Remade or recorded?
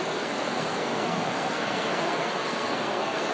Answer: remade